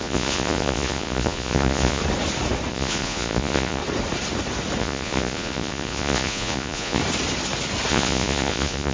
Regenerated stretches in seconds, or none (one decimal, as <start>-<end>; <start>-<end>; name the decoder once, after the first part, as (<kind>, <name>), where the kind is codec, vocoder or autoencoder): 0.0-2.0 (vocoder, Vocos); 2.7-3.8; 4.8-7.0; 7.9-8.9